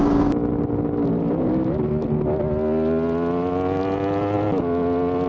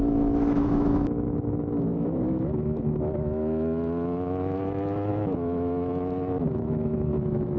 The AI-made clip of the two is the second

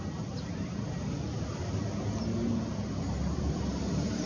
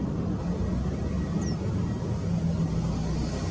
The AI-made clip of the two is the first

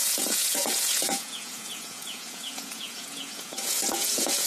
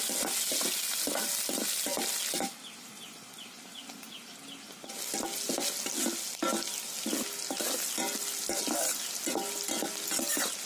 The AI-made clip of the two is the first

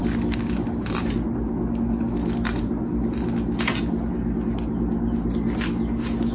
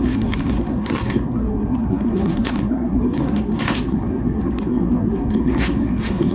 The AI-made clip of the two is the second